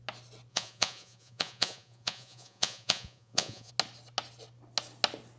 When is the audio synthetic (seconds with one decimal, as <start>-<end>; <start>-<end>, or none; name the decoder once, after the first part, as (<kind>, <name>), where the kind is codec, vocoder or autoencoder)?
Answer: 0.5-3.7 (vocoder, Vocos)